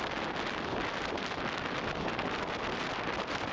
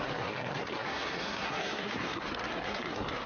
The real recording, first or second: first